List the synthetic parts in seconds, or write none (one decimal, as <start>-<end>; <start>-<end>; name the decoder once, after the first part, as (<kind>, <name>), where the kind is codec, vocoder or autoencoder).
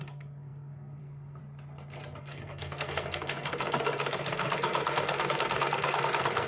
0.0-1.4 (codec, SNAC); 2.2-6.5